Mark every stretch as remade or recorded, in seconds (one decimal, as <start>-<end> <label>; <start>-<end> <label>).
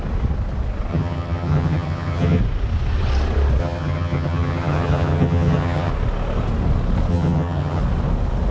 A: 0.0-0.9 recorded; 0.9-2.4 remade; 2.4-3.6 recorded; 3.6-5.9 remade; 5.9-7.1 recorded; 7.1-7.8 remade; 7.8-8.5 recorded